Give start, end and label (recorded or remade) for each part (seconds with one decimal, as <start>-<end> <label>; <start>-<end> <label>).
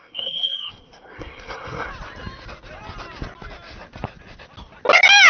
0.0-1.9 remade; 1.9-5.3 recorded